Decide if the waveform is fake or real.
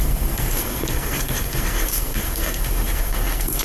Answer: fake